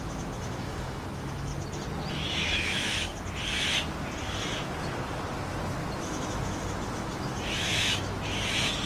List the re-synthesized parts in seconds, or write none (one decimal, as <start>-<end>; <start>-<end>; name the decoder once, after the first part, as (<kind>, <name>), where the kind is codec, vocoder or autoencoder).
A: 0.0-1.5 (autoencoder, DAC-VAE); 2.1-3.1; 6.0-8.9